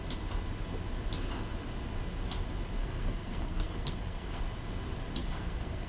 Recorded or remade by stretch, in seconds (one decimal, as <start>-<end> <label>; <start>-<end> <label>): 0.0-2.8 recorded; 2.8-4.4 remade; 4.4-5.2 recorded; 5.2-5.9 remade

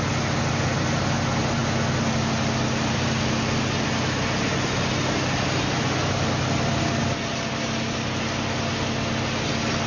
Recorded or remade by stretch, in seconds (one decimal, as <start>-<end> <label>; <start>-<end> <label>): 0.0-9.9 recorded

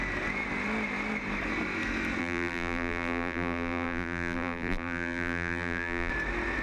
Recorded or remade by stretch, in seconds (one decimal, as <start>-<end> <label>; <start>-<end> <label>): 0.0-2.2 recorded; 2.2-6.1 remade; 6.1-6.6 recorded

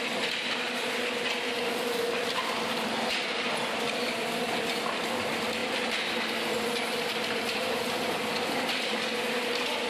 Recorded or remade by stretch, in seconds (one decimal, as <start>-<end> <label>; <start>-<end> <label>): 0.0-9.9 remade

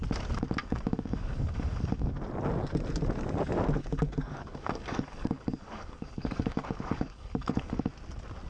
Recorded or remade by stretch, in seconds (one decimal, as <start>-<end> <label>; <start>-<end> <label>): 0.0-0.6 recorded; 0.6-2.1 remade; 2.1-3.8 recorded; 3.8-7.9 remade; 7.9-8.5 recorded

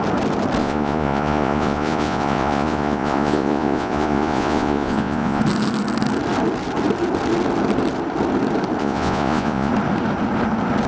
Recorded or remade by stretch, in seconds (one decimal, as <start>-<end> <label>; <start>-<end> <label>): 0.0-0.6 recorded; 0.6-5.4 remade; 5.4-8.8 recorded; 8.8-9.7 remade; 9.7-10.9 recorded

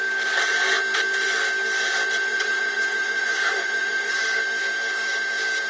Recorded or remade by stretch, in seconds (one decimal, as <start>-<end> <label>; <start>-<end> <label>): 0.0-2.3 recorded; 2.3-4.2 remade; 4.2-5.7 recorded